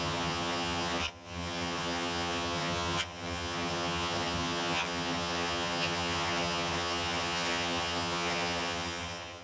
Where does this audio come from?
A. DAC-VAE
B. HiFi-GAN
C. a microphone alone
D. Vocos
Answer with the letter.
B